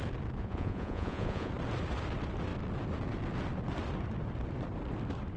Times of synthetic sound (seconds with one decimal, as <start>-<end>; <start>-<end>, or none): 0.4-1.5